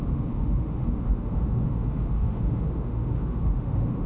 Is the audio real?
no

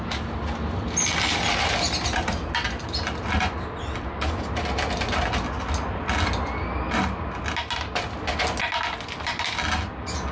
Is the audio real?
yes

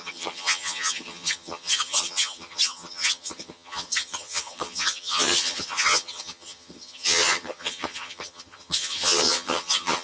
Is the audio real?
no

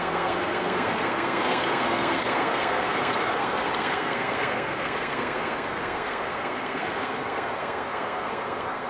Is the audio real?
no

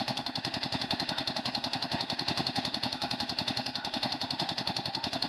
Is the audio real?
no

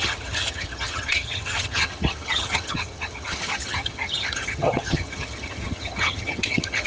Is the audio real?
no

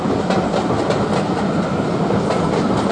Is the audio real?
yes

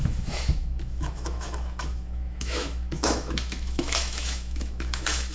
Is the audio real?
no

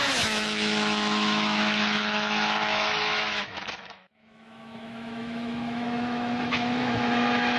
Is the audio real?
no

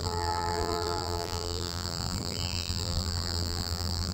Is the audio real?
no